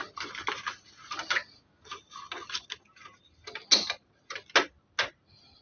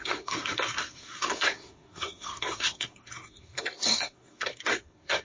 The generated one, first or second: second